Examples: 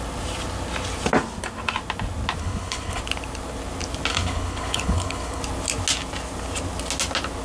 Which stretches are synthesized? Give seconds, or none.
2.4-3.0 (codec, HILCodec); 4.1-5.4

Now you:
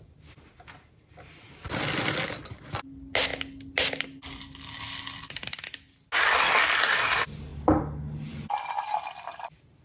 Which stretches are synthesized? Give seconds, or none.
none

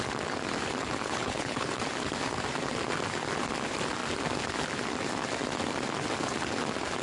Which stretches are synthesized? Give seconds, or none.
1.0-1.7 (codec, HILCodec)

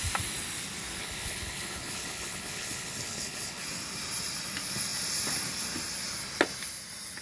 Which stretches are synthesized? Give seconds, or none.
1.0-3.6 (codec, HILCodec)

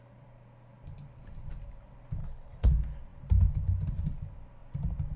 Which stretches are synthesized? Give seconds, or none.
2.2-2.7 (codec, HILCodec)

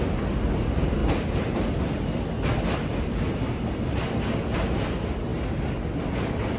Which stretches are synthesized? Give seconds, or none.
none

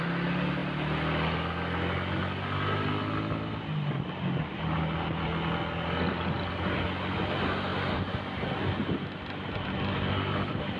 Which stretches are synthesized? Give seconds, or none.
none

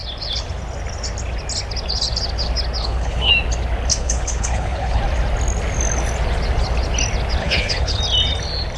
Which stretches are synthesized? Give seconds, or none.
2.8-3.3 (codec, HILCodec); 3.9-5.0; 7.4-8.0